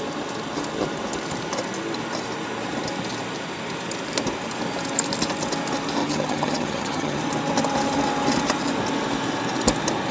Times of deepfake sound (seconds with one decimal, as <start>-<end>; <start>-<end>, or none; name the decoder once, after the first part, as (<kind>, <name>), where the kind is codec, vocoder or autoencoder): 6.0-7.2 (vocoder, HiFi-GAN)